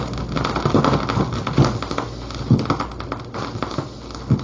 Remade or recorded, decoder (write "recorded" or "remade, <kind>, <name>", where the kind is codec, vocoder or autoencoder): recorded